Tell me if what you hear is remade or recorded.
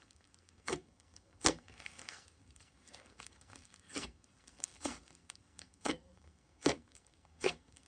remade